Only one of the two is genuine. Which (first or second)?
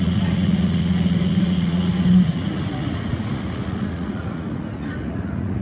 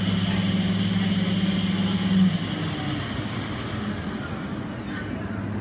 second